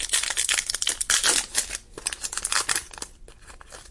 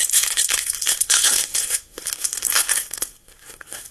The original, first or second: first